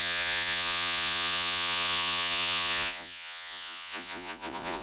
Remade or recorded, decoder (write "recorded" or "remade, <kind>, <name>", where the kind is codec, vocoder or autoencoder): remade, vocoder, Vocos